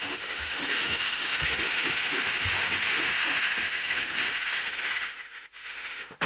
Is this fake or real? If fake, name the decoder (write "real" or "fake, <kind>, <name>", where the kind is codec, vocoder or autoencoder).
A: fake, autoencoder, DAC-VAE